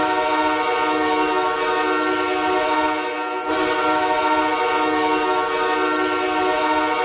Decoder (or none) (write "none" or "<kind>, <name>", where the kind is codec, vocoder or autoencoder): none